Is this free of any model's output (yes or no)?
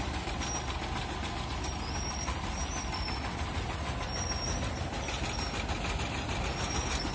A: yes